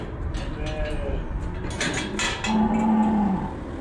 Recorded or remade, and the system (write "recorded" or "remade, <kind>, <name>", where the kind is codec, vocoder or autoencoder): recorded